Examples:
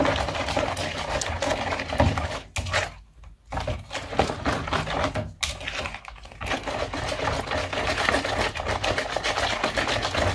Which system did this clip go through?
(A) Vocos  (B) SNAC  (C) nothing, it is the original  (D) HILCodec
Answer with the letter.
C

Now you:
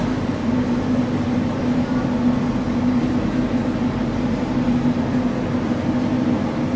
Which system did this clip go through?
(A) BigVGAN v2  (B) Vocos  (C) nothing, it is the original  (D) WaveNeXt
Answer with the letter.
C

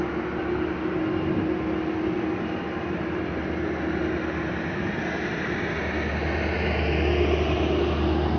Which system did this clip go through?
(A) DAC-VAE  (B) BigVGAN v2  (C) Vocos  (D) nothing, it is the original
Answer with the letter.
D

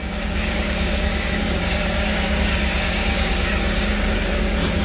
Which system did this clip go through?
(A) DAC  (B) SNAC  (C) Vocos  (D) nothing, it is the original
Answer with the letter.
A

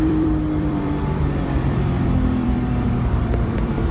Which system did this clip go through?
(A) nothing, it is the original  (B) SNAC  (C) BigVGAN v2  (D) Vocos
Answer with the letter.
C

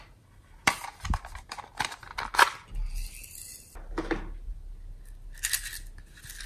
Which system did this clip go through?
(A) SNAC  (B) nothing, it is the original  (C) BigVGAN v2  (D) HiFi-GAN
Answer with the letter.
B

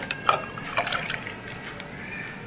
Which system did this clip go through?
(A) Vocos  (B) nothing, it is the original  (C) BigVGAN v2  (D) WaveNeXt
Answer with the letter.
B